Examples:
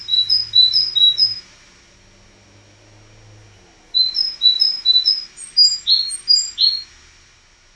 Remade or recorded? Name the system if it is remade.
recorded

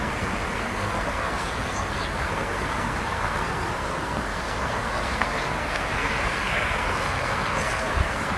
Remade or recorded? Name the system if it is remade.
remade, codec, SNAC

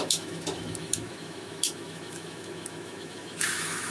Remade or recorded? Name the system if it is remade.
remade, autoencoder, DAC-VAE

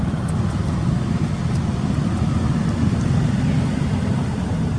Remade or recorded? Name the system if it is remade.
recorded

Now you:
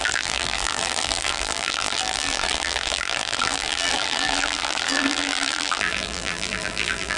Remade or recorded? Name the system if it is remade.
remade, vocoder, BigVGAN v2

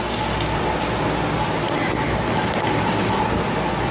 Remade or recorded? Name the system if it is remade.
recorded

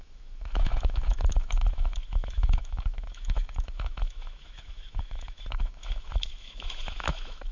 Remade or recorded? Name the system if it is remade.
remade, autoencoder, DAC-VAE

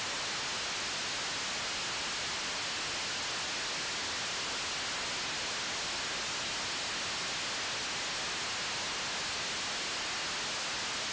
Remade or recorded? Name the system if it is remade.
recorded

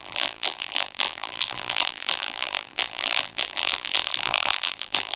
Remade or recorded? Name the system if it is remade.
remade, vocoder, BigVGAN v2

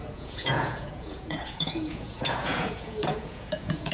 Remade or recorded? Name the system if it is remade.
remade, vocoder, Vocos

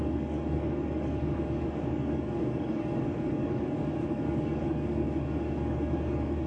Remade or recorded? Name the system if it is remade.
remade, codec, DAC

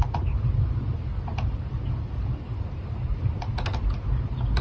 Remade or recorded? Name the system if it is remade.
recorded